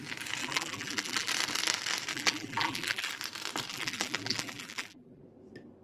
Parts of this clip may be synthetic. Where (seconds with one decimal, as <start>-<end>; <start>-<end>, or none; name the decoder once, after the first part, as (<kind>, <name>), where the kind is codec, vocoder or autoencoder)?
0.4-1.3 (vocoder, BigVGAN v2); 2.1-3.1; 3.7-5.2